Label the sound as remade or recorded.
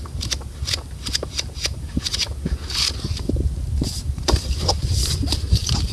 recorded